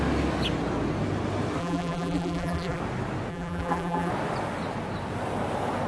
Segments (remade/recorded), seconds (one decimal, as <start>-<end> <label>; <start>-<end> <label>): 0.0-1.6 recorded; 1.6-2.8 remade; 2.8-3.3 recorded; 3.3-4.1 remade; 4.1-5.9 recorded